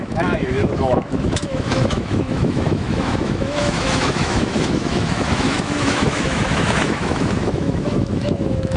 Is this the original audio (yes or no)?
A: no